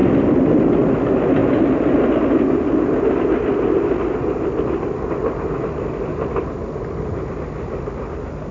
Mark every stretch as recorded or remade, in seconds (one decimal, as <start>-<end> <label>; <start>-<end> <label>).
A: 0.0-8.5 recorded